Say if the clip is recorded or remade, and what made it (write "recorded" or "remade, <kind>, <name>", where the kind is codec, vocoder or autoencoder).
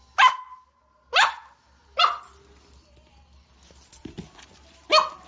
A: recorded